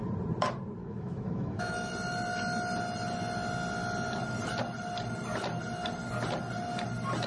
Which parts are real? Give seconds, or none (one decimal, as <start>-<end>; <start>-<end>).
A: 0.0-0.8; 1.9-7.3

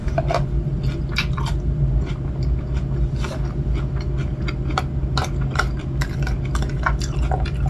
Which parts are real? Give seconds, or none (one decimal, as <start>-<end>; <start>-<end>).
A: 0.0-7.7